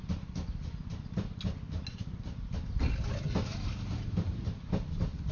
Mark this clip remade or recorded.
recorded